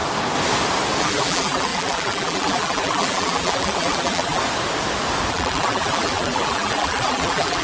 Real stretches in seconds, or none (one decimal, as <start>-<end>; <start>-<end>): 0.0-1.0; 4.4-5.3